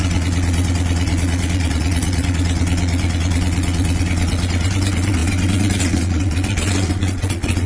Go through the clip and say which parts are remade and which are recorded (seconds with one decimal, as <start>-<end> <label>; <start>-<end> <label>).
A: 0.0-7.7 remade